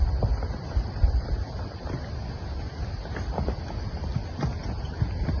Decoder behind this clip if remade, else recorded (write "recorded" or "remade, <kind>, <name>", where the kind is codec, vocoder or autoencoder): recorded